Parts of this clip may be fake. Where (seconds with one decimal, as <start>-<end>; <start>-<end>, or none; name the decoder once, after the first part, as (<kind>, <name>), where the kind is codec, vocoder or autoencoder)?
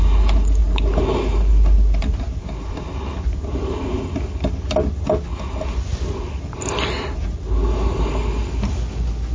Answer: none